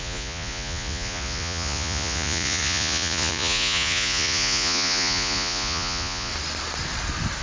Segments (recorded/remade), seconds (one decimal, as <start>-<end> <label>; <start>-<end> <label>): 0.0-6.3 remade; 6.3-7.4 recorded